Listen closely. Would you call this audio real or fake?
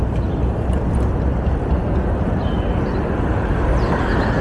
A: real